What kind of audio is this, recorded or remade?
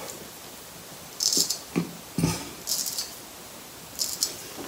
recorded